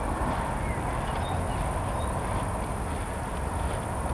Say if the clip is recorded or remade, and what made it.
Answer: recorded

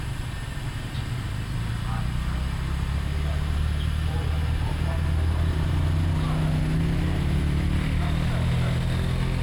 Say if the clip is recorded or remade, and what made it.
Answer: recorded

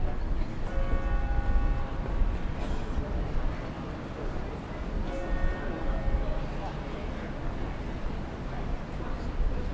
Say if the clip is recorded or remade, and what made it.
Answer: recorded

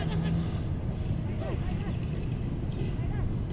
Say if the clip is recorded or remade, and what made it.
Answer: recorded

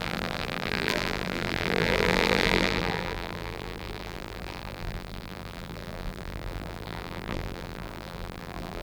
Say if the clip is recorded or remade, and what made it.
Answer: remade, vocoder, BigVGAN v2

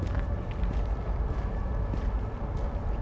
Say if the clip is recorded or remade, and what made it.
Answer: recorded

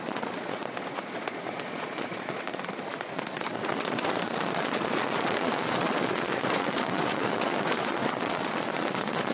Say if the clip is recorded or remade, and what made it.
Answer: remade, vocoder, Vocos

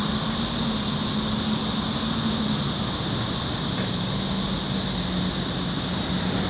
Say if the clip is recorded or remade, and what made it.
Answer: recorded